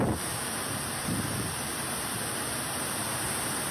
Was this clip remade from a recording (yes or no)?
no